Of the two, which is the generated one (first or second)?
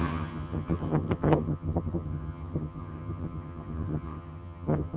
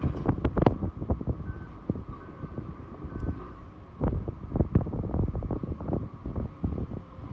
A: first